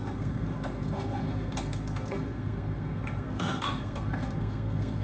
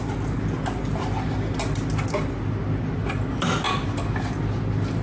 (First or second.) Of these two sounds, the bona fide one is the second